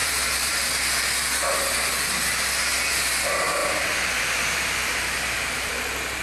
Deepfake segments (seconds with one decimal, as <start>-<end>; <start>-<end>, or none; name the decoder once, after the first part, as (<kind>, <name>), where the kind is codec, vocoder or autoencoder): 0.0-0.7 (vocoder, BigVGAN v2); 3.6-5.7